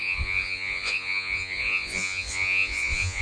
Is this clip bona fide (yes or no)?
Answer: no